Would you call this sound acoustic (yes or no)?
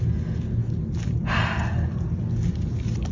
yes